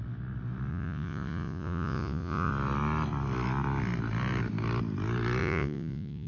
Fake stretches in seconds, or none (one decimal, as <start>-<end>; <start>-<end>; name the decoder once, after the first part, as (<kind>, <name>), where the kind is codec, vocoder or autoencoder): 0.7-2.5 (vocoder, Vocos); 5.4-6.3